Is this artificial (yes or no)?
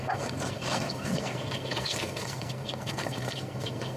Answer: yes